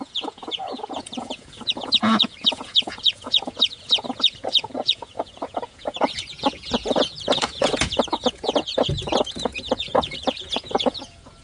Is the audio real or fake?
fake